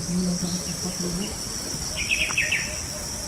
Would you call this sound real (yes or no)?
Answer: yes